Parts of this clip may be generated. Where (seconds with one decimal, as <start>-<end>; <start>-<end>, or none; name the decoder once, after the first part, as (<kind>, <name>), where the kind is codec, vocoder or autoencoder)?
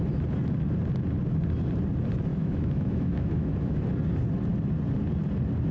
2.3-3.8 (autoencoder, DAC-VAE)